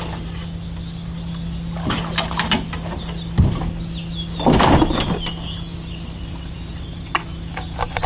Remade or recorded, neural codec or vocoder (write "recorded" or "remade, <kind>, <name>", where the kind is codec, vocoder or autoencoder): recorded